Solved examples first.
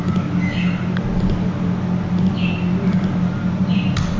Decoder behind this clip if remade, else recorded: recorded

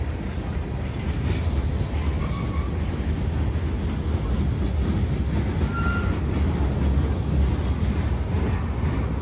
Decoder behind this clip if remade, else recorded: recorded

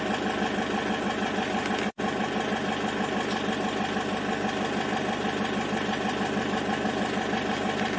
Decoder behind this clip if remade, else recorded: recorded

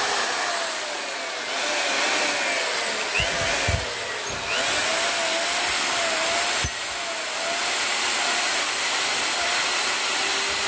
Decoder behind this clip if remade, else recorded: recorded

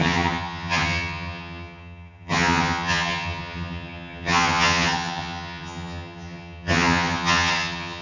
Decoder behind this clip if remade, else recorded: remade, vocoder, HiFi-GAN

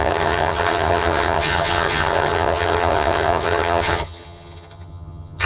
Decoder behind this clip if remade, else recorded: remade, vocoder, HiFi-GAN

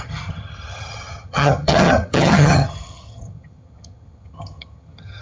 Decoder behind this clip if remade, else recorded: remade, vocoder, HiFi-GAN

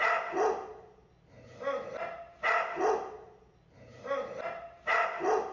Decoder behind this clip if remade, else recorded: recorded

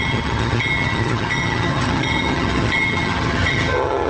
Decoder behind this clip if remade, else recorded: remade, vocoder, HiFi-GAN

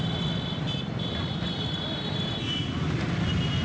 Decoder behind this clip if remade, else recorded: recorded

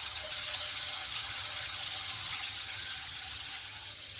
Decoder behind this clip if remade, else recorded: remade, vocoder, HiFi-GAN